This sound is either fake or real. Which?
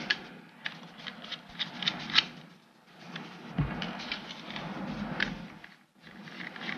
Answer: real